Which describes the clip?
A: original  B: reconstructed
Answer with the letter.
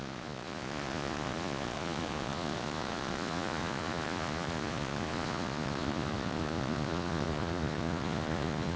B